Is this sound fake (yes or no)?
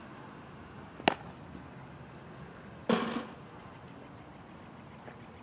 no